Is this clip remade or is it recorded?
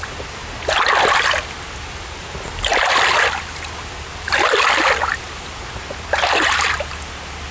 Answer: recorded